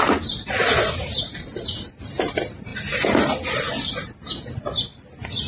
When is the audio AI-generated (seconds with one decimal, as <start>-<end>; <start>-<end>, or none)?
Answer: none

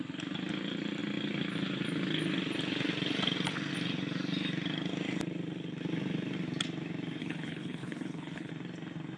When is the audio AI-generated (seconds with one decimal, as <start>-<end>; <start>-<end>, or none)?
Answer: 7.2-8.5

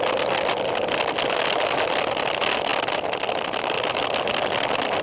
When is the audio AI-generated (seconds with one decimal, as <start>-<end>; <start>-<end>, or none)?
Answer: none

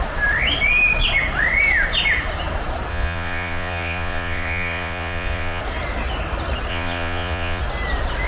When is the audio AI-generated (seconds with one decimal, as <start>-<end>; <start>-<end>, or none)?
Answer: 2.9-5.6; 6.7-7.6

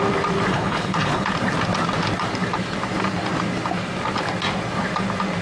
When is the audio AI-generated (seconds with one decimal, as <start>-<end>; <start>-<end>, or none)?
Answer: 0.5-1.3

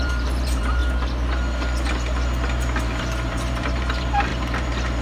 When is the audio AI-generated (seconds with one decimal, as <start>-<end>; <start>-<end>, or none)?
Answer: 0.0-0.8; 3.0-5.0

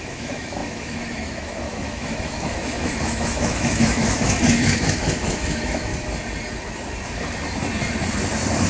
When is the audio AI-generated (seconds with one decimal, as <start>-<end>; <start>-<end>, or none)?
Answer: 0.0-5.9

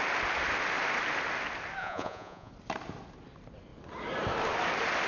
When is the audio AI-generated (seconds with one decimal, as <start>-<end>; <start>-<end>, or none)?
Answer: 1.8-2.5